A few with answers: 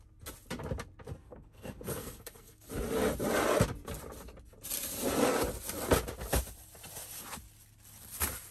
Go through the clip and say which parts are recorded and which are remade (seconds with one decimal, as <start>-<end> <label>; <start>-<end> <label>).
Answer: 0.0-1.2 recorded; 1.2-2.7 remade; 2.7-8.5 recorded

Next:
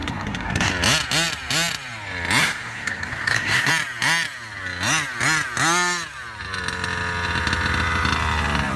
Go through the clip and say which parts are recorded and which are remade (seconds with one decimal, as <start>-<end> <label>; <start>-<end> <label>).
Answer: 0.0-0.7 remade; 0.7-2.4 recorded; 2.4-3.7 remade; 3.7-8.8 recorded

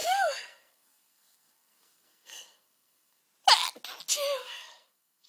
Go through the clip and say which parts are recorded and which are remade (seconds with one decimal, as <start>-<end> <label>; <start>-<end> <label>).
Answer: 0.0-3.2 remade; 3.2-4.4 recorded; 4.4-5.3 remade

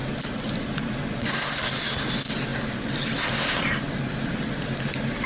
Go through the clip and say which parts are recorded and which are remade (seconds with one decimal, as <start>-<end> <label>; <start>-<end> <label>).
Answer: 0.0-5.3 recorded